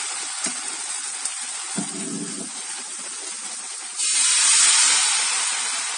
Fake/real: real